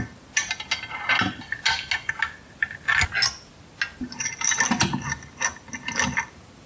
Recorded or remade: recorded